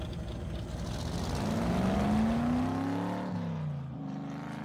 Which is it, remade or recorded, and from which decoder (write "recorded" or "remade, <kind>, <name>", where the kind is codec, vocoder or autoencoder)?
recorded